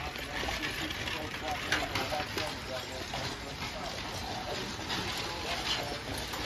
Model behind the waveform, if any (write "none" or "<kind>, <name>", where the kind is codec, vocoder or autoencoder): none